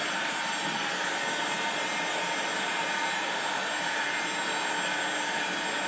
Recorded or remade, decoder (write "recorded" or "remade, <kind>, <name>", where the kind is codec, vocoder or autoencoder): recorded